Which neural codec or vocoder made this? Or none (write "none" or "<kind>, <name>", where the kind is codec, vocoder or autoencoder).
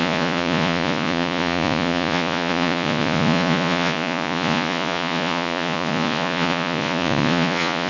vocoder, Vocos